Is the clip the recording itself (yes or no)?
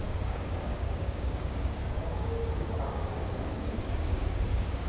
no